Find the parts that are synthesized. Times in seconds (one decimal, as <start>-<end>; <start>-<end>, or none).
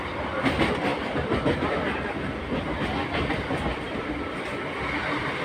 0.9-4.1